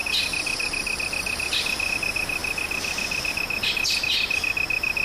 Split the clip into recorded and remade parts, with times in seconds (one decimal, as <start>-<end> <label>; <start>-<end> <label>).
0.0-5.0 recorded